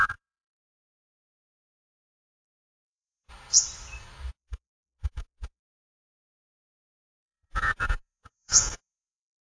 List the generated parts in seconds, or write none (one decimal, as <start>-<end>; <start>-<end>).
0.0-3.3; 4.3-9.4